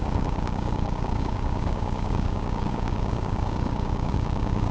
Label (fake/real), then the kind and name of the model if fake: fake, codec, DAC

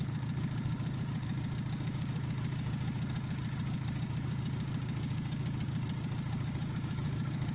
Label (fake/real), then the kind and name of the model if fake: fake, codec, DAC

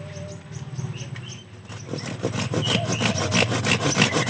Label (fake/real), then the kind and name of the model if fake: real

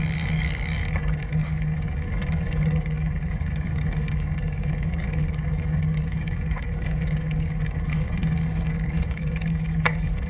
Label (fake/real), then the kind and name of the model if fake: fake, codec, DAC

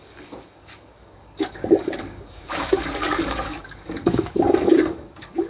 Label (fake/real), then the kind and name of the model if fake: fake, codec, DAC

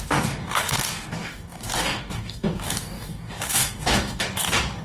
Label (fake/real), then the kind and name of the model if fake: fake, codec, DAC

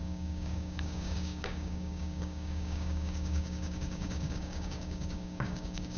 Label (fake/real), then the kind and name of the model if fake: fake, codec, DAC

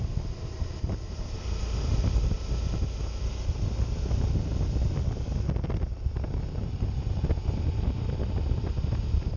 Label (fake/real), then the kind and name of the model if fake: real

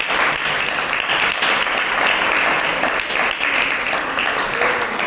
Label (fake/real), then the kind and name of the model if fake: real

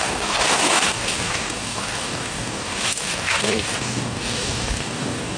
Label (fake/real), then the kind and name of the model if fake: fake, codec, DAC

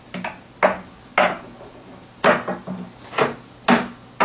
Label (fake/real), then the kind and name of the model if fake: real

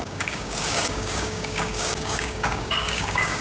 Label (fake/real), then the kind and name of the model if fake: fake, codec, DAC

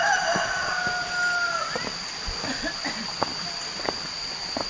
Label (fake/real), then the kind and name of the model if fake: real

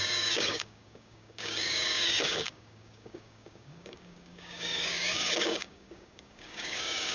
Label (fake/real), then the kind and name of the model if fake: fake, codec, DAC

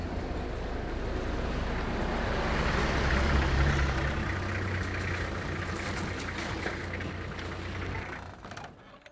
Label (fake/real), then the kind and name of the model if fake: real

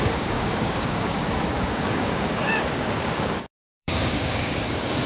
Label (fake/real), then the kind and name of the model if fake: fake, codec, DAC